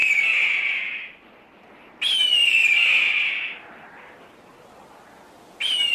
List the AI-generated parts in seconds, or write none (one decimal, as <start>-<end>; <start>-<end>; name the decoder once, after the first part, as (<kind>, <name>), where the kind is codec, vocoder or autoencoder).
none